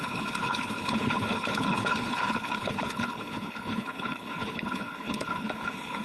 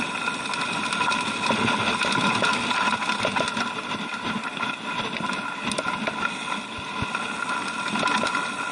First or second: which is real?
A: second